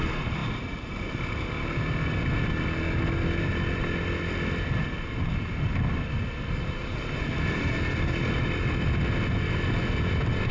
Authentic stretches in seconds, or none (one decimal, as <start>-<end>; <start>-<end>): 0.0-10.5